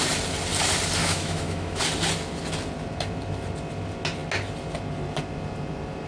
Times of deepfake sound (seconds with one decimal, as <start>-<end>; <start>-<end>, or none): 1.0-1.8